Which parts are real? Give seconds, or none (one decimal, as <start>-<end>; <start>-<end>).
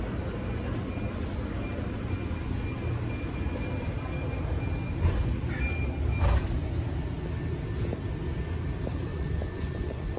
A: 0.0-9.1